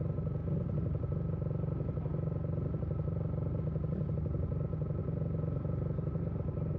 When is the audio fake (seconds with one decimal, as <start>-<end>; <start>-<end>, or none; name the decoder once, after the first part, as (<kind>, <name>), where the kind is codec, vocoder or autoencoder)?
none